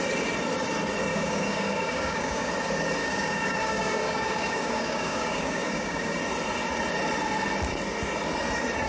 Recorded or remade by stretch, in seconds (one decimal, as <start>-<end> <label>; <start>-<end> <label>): 0.0-1.1 recorded; 1.1-2.5 remade; 2.5-3.0 recorded; 3.0-6.2 remade; 6.2-8.9 recorded

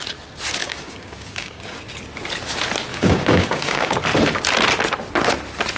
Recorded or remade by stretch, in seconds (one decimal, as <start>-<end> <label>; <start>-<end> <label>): 0.0-0.6 recorded; 0.6-1.8 remade; 1.8-2.9 recorded; 2.9-4.0 remade; 4.0-5.8 recorded

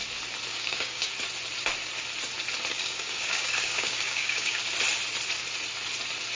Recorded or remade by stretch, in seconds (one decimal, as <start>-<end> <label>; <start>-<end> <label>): 0.0-0.5 recorded; 0.5-1.1 remade; 1.1-2.7 recorded; 2.7-4.6 remade; 4.6-6.3 recorded